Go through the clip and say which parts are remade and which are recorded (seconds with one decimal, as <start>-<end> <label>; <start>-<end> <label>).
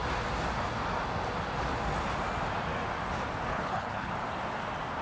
0.0-3.5 recorded; 3.5-4.1 remade; 4.1-5.0 recorded